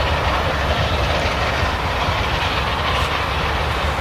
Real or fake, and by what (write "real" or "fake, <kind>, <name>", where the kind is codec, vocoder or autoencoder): real